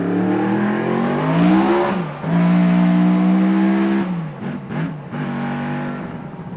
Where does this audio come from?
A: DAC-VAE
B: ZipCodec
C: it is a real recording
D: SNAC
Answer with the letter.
C